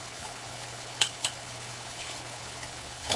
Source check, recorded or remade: remade